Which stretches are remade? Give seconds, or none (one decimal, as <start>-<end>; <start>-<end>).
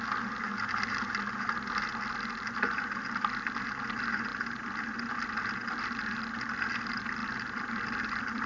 4.3-4.9; 7.2-8.5